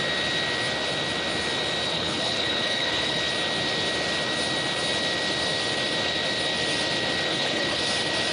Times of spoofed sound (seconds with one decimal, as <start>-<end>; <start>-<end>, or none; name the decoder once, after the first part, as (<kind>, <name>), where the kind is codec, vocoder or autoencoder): 1.9-3.2 (codec, HILCodec); 7.3-7.8